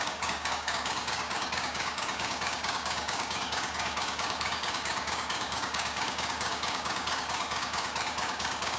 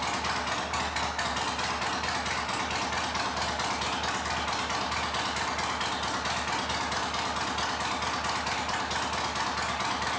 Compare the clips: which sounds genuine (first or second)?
second